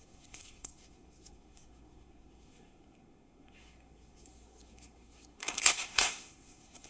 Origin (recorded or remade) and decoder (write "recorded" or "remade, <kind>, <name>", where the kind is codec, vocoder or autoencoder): remade, codec, SNAC